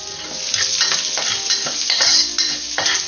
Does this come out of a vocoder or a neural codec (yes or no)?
no